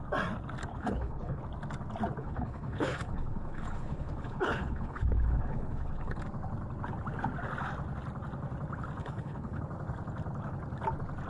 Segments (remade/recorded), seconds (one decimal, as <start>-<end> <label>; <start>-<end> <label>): 0.0-0.7 recorded; 0.7-1.4 remade; 1.4-2.2 recorded; 2.2-6.2 remade; 6.2-9.0 recorded; 9.0-9.6 remade; 9.6-11.3 recorded